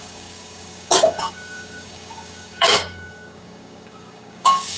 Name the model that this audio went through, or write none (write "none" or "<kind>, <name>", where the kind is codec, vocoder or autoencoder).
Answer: codec, DAC